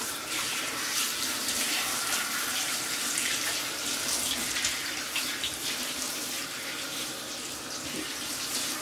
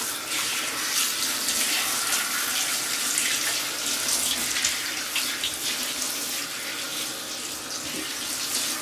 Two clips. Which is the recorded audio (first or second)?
second